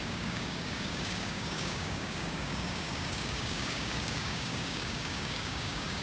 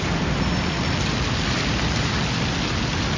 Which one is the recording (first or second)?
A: second